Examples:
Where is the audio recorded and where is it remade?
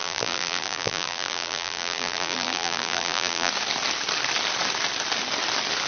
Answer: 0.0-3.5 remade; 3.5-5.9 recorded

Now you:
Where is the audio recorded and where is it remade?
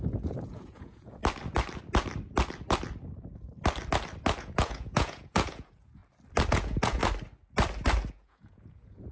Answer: 0.0-1.2 remade; 1.2-4.4 recorded; 4.4-6.0 remade; 6.0-6.5 recorded; 6.5-7.0 remade; 7.0-8.1 recorded; 8.1-9.1 remade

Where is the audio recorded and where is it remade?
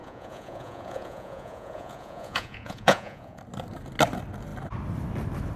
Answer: 0.0-3.4 remade; 3.4-5.6 recorded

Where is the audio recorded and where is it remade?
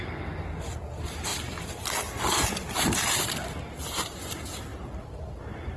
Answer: 0.0-5.8 recorded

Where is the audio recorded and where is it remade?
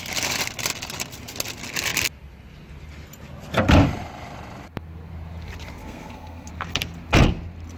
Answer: 0.0-5.8 recorded; 5.8-6.5 remade; 6.5-7.8 recorded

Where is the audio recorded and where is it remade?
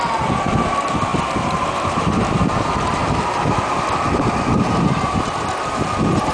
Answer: 0.0-6.3 recorded